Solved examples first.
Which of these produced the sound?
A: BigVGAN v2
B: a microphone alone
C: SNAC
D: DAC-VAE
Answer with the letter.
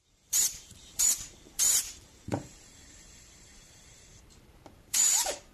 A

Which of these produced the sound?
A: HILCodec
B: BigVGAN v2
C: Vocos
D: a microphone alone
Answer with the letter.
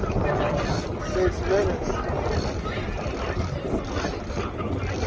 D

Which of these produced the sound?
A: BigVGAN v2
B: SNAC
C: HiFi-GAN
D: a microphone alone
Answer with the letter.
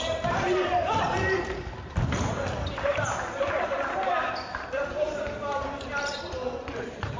A